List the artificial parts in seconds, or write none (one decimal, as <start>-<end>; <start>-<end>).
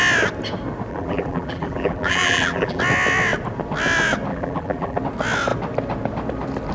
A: 0.9-2.8; 4.3-5.0